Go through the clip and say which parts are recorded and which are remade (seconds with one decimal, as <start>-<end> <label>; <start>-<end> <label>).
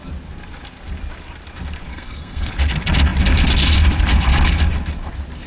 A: 0.0-1.9 recorded; 1.9-2.5 remade; 2.5-5.5 recorded